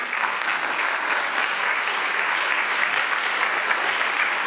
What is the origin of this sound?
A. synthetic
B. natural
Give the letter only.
A